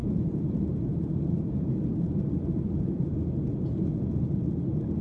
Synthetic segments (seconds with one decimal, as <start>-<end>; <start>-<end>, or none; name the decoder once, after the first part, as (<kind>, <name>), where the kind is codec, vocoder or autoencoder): 0.0-0.6 (vocoder, Vocos)